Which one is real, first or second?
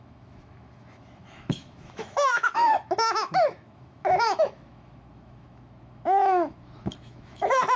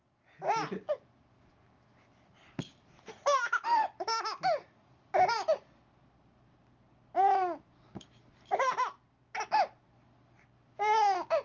second